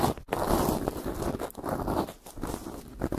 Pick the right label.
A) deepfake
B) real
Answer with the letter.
B